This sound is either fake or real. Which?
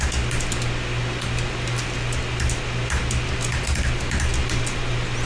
real